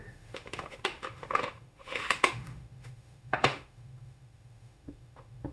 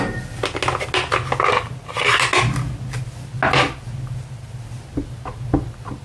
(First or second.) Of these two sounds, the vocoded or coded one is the first